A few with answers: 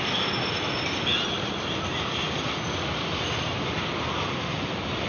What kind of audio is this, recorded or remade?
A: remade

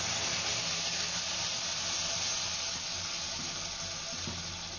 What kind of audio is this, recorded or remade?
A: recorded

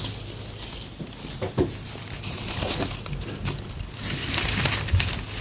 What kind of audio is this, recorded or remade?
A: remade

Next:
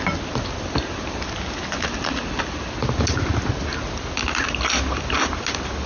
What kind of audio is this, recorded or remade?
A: recorded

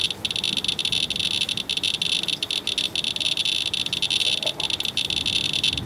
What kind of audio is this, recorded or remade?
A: recorded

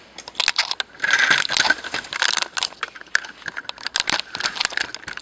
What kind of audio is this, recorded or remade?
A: recorded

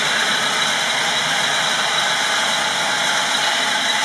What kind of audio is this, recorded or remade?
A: recorded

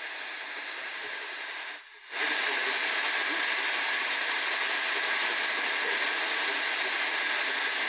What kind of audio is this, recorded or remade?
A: recorded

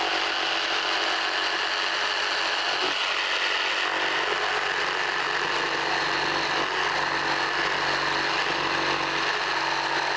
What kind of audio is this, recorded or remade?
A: recorded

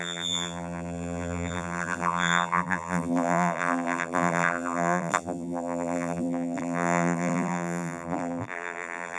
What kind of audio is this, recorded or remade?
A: remade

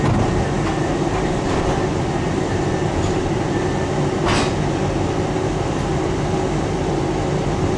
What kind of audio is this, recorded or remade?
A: recorded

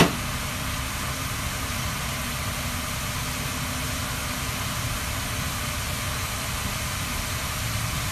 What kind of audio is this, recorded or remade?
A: recorded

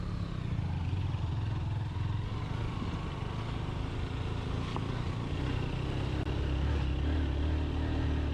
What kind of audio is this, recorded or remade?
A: recorded